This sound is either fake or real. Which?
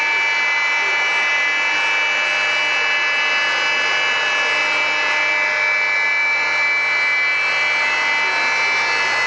real